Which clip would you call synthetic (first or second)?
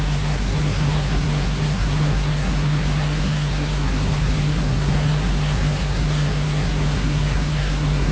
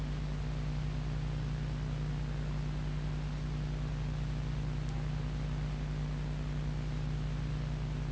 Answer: first